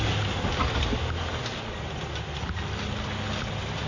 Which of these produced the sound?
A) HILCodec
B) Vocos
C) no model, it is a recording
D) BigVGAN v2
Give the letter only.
C